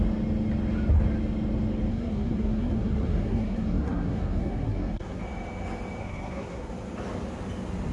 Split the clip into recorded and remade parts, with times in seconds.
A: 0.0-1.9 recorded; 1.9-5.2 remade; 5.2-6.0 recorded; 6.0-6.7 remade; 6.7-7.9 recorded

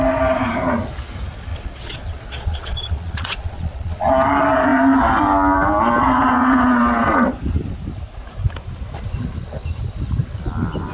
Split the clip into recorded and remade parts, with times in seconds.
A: 0.0-1.5 recorded; 1.5-4.1 remade; 4.1-10.9 recorded

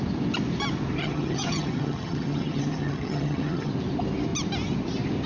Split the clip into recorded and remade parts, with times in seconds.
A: 0.0-1.0 recorded; 1.0-3.7 remade; 3.7-5.3 recorded

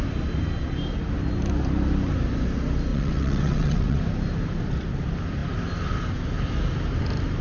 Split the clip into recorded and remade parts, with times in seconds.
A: 0.0-2.9 recorded; 2.9-4.0 remade; 4.0-7.4 recorded